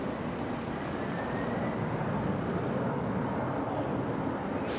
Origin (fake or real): real